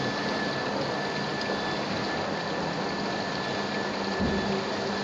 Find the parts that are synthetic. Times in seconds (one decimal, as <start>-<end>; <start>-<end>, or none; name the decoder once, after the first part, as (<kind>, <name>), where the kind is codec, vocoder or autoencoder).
none